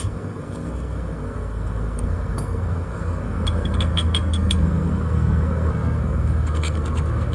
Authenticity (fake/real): fake